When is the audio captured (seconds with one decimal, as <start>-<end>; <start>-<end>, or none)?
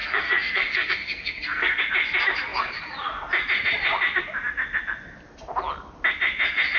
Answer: 1.8-6.8